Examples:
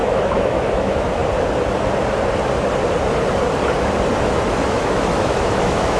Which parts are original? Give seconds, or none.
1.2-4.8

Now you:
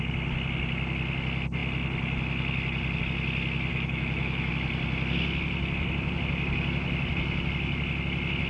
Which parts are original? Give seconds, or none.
0.0-3.7; 4.5-8.5

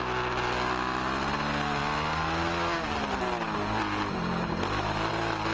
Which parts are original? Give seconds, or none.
0.0-5.5

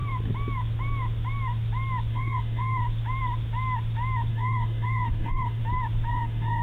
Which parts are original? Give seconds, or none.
0.0-2.1; 2.8-4.3; 5.6-6.1

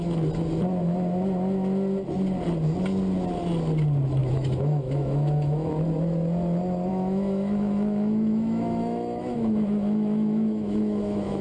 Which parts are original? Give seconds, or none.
0.0-4.2; 5.7-6.9

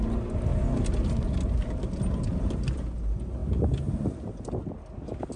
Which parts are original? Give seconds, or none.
0.0-5.4

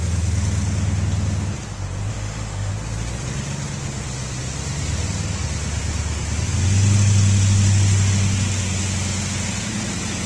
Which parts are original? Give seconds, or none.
0.0-2.1; 2.7-10.3

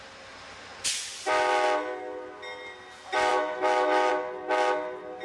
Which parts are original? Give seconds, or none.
0.0-3.3; 4.1-5.2